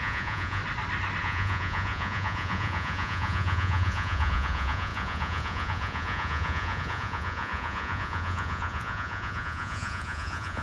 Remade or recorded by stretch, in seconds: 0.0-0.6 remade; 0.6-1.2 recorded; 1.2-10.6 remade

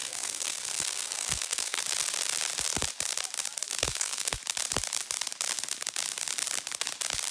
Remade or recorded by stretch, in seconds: 0.0-1.8 remade; 1.8-3.8 recorded; 3.8-4.4 remade; 4.4-7.3 recorded

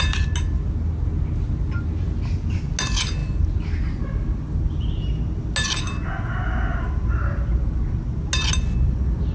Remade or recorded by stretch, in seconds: 0.0-9.3 recorded

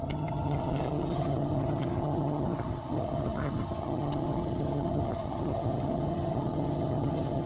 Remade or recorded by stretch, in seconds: 0.0-7.5 remade

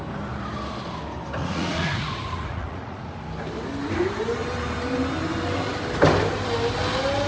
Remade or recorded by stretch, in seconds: 0.0-1.4 recorded; 1.4-3.1 remade; 3.1-7.3 recorded